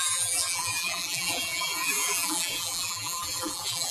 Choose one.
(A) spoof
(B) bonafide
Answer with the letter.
A